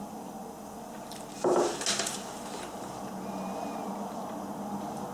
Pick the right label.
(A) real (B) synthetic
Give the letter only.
A